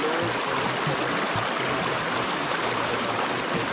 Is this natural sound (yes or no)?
yes